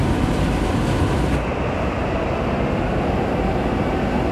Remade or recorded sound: recorded